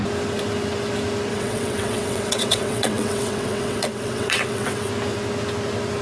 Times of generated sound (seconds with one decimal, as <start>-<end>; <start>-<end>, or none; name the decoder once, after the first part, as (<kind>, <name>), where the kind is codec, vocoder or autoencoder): 1.3-4.9 (vocoder, WaveNeXt)